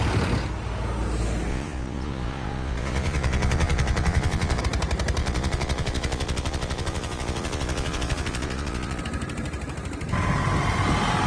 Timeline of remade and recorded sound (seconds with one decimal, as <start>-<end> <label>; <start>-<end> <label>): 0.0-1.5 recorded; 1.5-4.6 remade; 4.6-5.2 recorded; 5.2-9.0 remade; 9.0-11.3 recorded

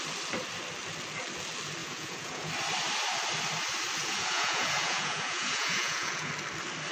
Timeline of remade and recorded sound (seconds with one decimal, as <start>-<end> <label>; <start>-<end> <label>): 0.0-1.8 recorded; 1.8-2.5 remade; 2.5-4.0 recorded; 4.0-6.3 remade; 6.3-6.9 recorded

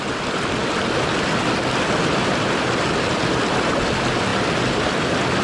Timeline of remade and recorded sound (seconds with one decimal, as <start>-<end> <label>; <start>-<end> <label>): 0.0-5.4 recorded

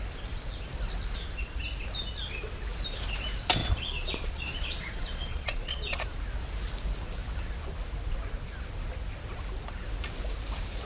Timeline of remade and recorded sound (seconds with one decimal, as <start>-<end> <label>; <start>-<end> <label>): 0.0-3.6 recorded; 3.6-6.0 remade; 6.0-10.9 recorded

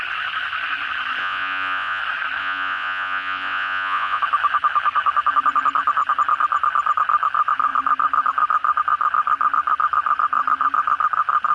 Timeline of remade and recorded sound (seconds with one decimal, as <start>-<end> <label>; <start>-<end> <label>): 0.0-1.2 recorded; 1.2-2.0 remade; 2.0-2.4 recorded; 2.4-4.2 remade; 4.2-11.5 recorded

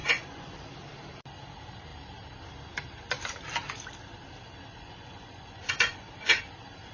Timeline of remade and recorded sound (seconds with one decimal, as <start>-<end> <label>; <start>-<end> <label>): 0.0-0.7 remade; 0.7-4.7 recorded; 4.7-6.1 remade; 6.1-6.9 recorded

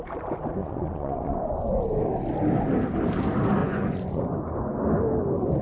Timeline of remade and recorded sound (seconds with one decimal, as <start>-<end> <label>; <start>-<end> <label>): 0.0-0.6 recorded; 0.6-1.8 remade; 1.8-3.6 recorded; 3.6-4.2 remade; 4.2-5.6 recorded

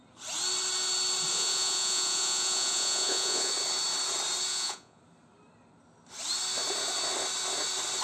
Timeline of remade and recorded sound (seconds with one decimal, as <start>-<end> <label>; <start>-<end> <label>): 0.0-1.3 recorded; 1.3-3.5 remade; 3.5-4.5 recorded; 4.5-5.0 remade; 5.0-8.0 recorded